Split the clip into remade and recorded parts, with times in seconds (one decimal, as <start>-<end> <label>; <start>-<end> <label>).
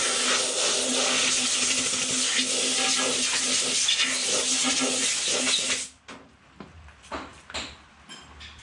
0.0-8.6 recorded